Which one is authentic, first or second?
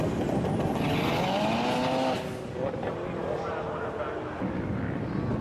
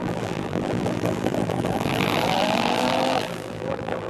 first